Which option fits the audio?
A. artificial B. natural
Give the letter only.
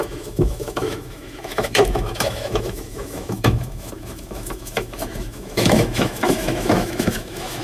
A